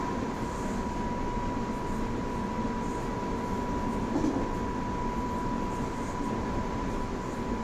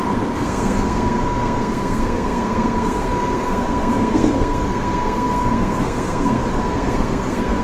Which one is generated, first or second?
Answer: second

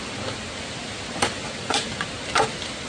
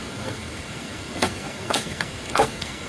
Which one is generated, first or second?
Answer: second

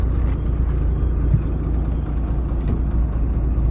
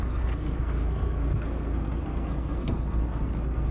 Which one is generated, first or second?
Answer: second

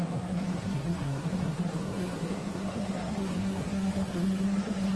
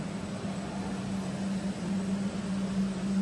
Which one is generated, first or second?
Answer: first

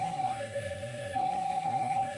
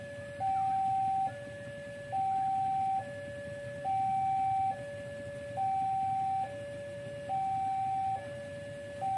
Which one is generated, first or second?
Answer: first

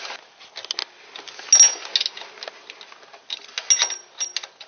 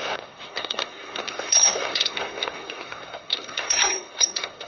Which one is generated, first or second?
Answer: second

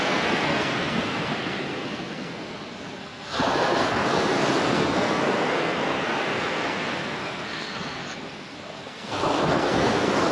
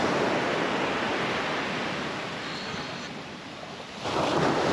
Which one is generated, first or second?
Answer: first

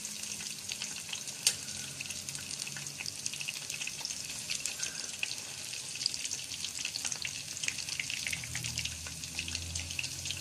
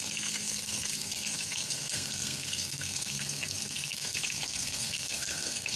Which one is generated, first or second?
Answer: second